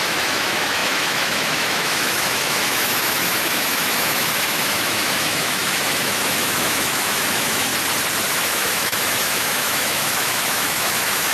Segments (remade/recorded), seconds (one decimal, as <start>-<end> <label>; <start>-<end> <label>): 0.0-7.7 remade; 7.7-8.3 recorded; 8.3-11.3 remade